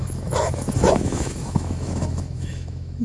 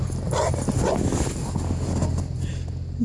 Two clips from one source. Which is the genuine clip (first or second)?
second